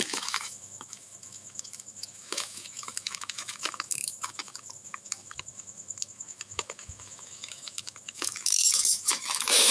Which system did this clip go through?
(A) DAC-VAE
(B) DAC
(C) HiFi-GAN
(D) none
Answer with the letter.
A